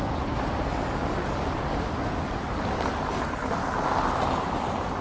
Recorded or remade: recorded